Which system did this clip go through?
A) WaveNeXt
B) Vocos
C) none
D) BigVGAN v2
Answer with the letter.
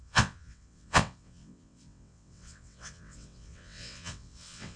A